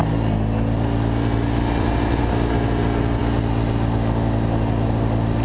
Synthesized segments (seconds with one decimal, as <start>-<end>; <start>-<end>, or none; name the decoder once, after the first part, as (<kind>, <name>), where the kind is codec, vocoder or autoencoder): none